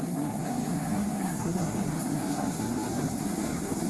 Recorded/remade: remade